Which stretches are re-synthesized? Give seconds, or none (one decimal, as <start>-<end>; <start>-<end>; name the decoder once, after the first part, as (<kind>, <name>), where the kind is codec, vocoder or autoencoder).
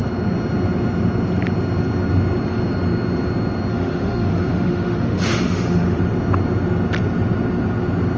3.7-6.0 (autoencoder, DAC-VAE)